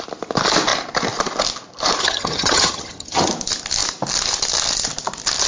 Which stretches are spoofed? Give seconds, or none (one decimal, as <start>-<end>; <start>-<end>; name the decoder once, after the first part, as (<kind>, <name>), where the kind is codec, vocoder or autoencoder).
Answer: 2.0-3.3 (vocoder, HiFi-GAN)

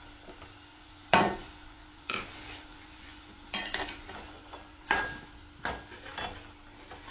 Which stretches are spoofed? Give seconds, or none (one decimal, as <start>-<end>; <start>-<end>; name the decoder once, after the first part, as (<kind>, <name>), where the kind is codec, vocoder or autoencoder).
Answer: 0.7-5.0 (vocoder, Vocos)

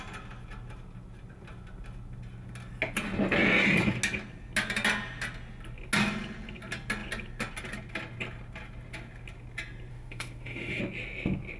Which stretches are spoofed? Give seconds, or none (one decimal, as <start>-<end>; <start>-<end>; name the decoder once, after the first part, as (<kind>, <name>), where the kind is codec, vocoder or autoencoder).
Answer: 9.9-10.8 (autoencoder, DAC-VAE)

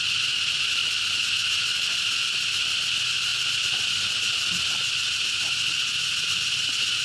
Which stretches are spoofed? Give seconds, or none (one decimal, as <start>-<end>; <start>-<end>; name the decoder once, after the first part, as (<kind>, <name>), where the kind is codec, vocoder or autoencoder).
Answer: none

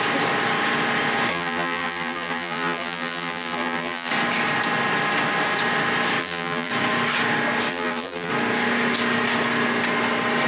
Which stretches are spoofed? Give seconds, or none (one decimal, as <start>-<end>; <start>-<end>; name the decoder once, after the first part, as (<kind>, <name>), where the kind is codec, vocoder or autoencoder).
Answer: 1.3-4.1 (vocoder, BigVGAN v2); 6.2-6.7; 7.7-8.3